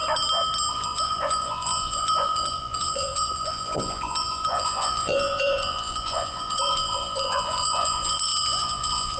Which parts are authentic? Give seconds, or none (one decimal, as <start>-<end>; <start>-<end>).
0.0-0.7